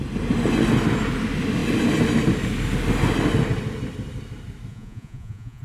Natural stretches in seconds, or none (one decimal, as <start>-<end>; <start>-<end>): 0.0-4.7